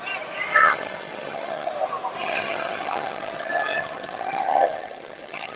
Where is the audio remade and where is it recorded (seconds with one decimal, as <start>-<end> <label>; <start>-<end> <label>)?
0.0-0.5 recorded; 0.5-1.7 remade; 1.7-2.2 recorded; 2.2-5.6 remade